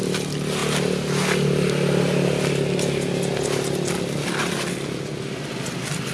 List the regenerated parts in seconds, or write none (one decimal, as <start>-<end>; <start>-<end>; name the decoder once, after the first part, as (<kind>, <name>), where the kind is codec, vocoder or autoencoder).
none